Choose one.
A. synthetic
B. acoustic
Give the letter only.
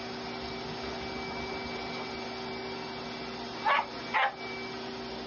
B